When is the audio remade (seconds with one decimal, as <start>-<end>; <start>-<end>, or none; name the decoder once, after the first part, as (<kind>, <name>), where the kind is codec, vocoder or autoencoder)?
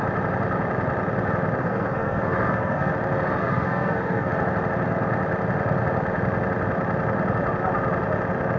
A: 1.6-2.9 (codec, SNAC); 3.4-4.3